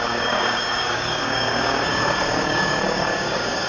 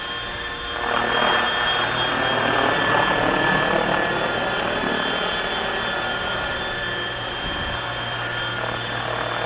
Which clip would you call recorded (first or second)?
second